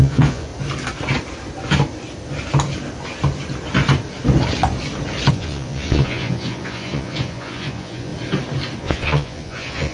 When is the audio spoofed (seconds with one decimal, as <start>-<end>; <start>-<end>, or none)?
0.0-0.5; 5.3-8.1; 8.8-9.9

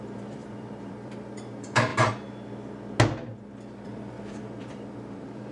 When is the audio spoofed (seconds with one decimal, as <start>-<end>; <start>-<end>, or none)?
0.0-1.9; 3.7-5.5

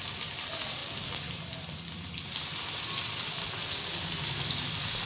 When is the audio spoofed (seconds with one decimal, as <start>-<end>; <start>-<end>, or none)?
none

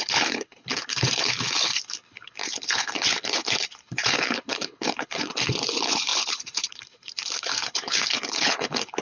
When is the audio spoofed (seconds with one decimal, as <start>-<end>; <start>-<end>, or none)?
0.0-9.0